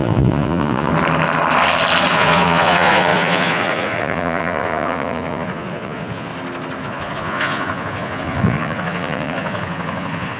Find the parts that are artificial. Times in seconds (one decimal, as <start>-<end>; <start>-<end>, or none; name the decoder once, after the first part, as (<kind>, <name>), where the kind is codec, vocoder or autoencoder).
0.0-0.9 (vocoder, Vocos); 2.1-6.3; 6.8-10.4